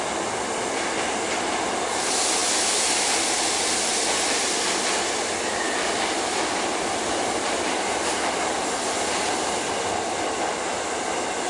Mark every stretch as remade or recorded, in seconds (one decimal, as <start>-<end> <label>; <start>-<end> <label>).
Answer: 0.0-11.5 recorded